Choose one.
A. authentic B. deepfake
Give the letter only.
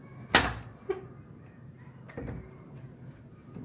A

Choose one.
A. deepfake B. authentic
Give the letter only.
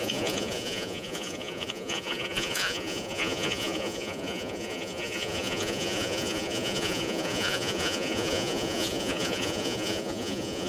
A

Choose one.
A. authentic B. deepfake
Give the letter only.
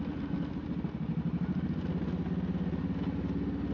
A